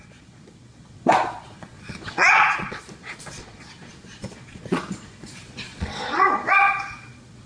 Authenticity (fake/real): fake